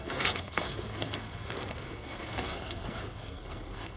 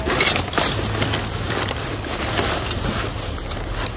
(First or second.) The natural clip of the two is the second